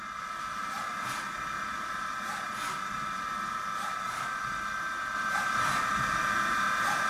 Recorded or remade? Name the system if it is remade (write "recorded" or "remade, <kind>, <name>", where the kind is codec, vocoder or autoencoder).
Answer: recorded